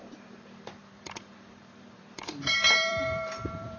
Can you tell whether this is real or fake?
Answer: fake